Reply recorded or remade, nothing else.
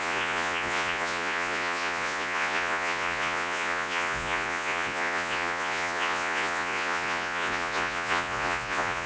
remade